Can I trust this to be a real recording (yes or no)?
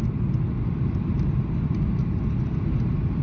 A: yes